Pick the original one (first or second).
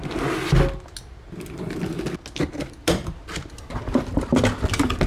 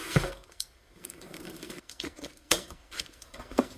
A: first